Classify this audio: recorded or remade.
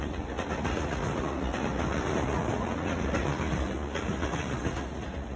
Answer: remade